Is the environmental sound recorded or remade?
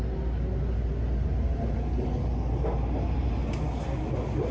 recorded